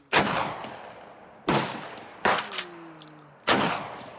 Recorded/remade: recorded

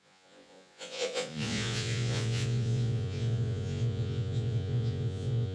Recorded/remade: remade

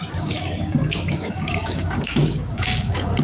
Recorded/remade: remade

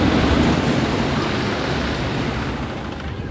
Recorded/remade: recorded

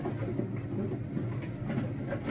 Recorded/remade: recorded